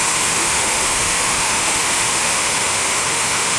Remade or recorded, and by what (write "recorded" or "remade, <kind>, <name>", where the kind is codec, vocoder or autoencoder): remade, autoencoder, DAC-VAE